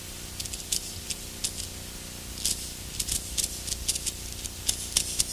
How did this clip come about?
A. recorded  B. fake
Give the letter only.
A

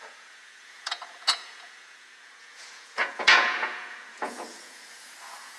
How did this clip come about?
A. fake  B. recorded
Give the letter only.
A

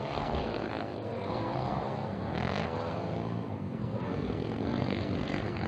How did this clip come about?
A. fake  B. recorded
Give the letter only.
A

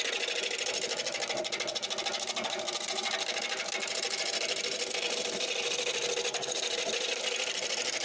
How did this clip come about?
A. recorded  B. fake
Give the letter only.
A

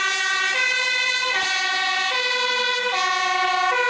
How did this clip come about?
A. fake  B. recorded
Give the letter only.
B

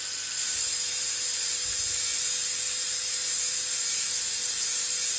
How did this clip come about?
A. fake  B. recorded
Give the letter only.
B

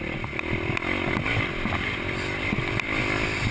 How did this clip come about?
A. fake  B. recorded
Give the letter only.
B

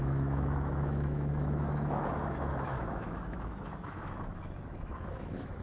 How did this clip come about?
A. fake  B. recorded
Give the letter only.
A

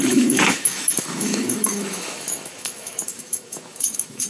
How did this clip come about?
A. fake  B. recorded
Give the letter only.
A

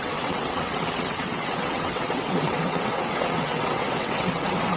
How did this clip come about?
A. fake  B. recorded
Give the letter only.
A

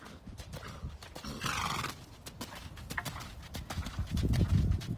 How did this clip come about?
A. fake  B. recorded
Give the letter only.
B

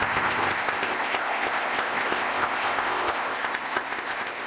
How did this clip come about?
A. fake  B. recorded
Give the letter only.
A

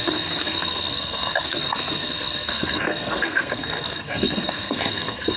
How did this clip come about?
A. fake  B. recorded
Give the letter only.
A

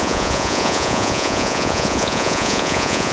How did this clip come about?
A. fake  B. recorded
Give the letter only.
A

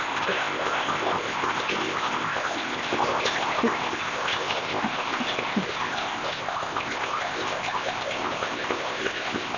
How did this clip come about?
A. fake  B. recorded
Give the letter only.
A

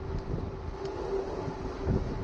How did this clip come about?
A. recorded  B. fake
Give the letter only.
A